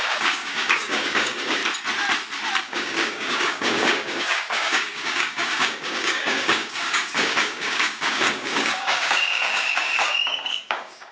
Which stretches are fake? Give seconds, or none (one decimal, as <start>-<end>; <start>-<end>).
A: 0.0-1.6; 2.6-11.1